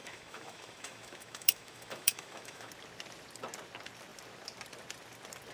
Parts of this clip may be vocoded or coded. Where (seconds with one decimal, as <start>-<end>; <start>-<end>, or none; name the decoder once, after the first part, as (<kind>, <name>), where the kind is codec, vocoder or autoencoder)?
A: 0.0-2.7 (autoencoder, DAC-VAE)